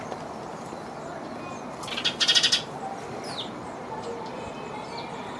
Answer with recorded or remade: recorded